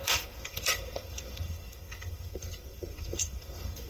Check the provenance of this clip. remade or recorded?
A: remade